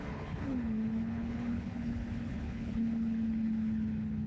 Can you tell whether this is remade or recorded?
remade